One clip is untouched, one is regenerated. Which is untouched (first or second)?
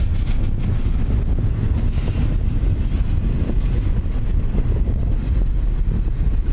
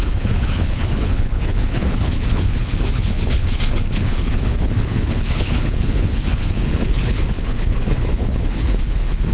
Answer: first